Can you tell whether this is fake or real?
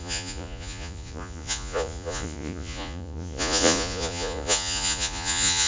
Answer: fake